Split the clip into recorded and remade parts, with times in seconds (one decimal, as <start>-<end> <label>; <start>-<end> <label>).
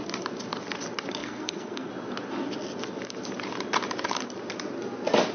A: 0.0-1.2 recorded; 1.2-1.9 remade; 1.9-5.3 recorded